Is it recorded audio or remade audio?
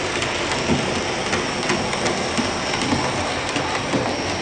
recorded